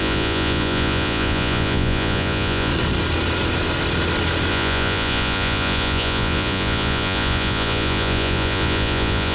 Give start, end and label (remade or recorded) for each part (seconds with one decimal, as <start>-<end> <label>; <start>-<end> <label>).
0.0-2.7 remade; 2.7-4.5 recorded; 4.5-9.3 remade